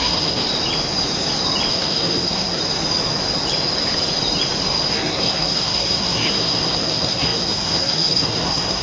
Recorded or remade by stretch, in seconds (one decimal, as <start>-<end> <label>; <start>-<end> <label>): 0.0-0.4 remade; 0.4-1.7 recorded; 1.7-2.6 remade; 2.6-4.9 recorded; 4.9-8.8 remade